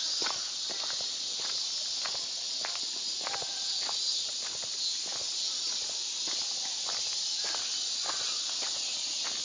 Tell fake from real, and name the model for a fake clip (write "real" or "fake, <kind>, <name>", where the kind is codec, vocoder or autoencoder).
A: real